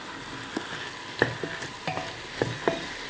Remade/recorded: recorded